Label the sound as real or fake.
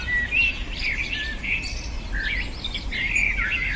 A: real